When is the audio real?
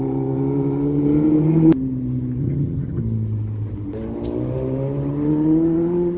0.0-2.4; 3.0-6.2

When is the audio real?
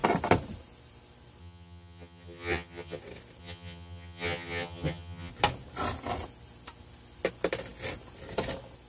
0.0-1.4; 3.0-3.4; 5.3-8.9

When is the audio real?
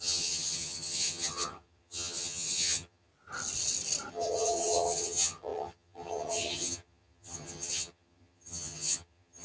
3.1-4.1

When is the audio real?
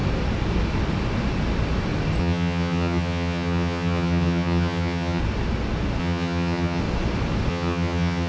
0.0-2.2; 5.2-6.0; 6.8-7.5